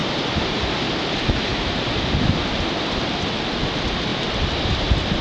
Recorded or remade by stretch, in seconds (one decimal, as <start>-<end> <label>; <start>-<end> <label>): 0.0-0.8 remade; 0.8-4.1 recorded; 4.1-4.7 remade; 4.7-5.2 recorded